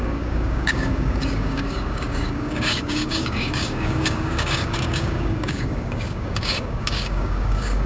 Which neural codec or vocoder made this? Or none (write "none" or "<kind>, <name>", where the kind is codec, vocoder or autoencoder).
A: codec, DAC